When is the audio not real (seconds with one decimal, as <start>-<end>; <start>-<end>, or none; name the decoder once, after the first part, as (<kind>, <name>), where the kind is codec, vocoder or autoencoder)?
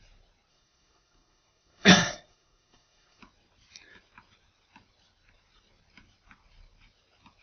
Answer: 0.5-3.2 (codec, SNAC)